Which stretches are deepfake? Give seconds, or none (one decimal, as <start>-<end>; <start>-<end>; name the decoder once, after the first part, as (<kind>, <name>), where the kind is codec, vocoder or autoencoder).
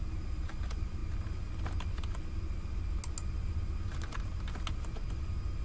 none